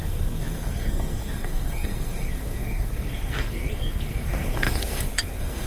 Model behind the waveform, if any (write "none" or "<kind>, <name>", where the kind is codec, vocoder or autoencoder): codec, SNAC